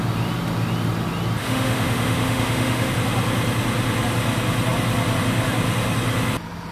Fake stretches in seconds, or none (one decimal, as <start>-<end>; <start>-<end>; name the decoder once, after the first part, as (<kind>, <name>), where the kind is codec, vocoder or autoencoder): 1.4-2.9 (autoencoder, DAC-VAE)